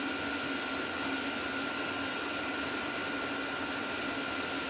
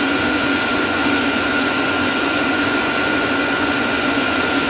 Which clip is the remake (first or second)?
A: second